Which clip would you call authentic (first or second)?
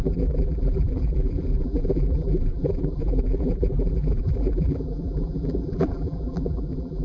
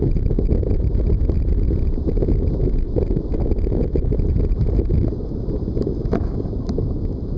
second